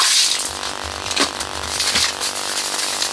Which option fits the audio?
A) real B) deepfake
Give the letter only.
A